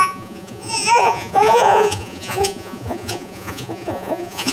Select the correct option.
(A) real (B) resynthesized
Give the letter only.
B